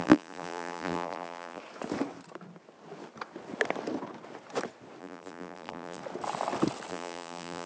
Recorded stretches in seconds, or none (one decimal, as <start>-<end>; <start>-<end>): 1.6-5.0; 6.0-6.9